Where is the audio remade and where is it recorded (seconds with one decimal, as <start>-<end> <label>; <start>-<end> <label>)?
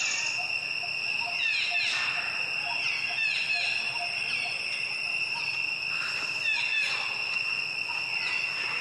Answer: 0.0-7.4 recorded; 7.4-8.3 remade; 8.3-8.8 recorded